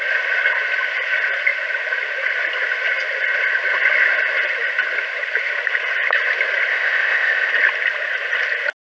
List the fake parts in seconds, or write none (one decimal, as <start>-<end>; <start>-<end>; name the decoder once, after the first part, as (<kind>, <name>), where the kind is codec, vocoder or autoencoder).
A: 6.7-7.5 (codec, ZipCodec)